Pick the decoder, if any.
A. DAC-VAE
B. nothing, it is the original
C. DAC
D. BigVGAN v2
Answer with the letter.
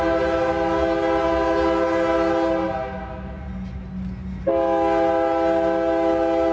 B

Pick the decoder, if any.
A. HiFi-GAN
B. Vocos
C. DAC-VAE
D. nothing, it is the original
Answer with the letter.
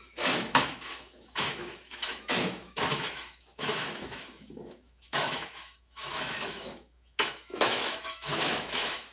C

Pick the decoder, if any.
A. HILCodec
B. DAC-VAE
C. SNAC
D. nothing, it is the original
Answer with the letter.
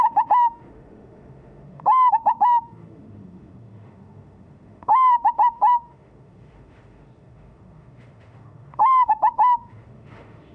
B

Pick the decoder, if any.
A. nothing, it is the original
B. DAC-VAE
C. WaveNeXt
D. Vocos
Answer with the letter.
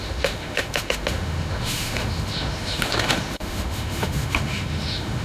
B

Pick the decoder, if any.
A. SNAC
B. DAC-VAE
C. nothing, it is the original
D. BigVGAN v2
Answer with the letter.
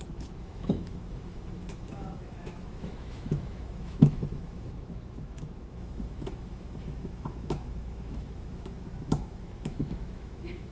B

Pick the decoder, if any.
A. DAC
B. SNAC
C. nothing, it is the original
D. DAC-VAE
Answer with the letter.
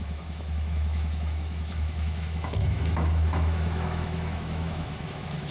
D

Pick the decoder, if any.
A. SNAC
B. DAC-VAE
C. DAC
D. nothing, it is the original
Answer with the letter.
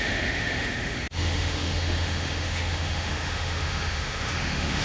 B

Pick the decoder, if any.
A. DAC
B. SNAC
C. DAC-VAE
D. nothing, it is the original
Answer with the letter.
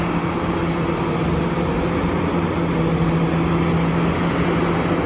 D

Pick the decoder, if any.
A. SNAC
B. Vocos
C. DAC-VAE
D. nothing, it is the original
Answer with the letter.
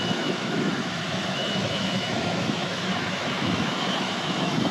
C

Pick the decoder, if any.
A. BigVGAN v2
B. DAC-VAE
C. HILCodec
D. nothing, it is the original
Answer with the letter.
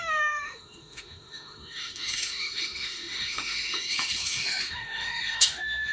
B